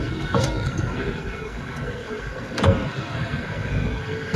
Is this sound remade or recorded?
remade